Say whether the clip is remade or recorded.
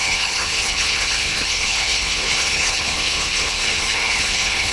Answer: remade